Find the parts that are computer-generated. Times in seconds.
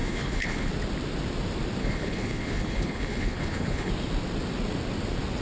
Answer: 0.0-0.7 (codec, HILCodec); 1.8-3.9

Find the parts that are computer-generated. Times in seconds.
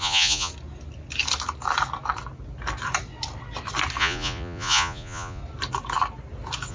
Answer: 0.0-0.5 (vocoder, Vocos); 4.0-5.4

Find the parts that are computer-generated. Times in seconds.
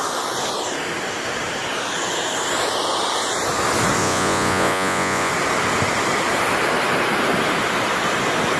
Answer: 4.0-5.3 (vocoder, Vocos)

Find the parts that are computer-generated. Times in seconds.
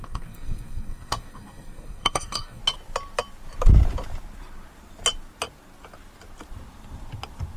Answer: 0.0-2.6 (codec, SNAC)